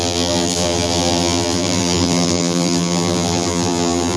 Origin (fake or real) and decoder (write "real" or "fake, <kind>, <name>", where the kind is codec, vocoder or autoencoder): fake, vocoder, BigVGAN v2